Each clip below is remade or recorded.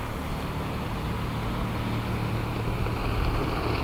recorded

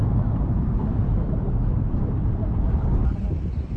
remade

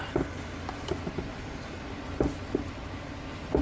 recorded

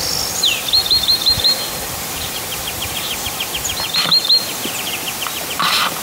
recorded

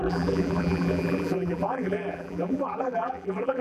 remade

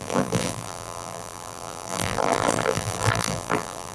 remade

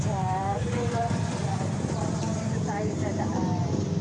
remade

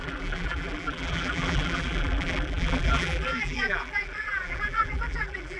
remade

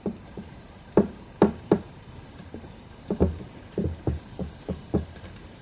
remade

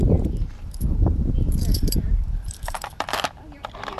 remade